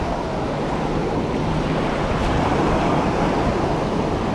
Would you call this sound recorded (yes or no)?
yes